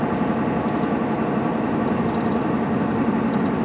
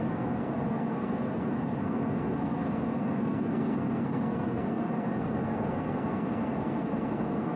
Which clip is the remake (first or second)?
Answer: second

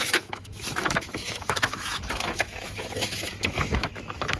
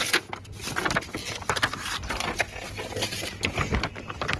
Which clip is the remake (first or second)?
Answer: first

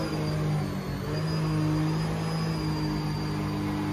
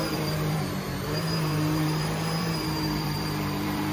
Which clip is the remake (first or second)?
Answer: second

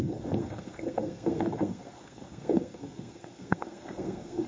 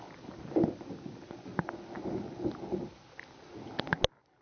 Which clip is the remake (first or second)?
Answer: first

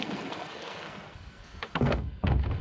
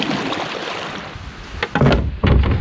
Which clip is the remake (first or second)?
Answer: first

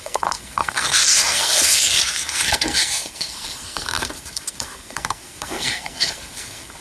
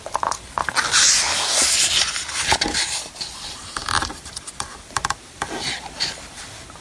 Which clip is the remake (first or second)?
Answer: first